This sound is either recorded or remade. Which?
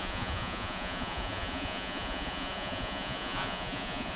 remade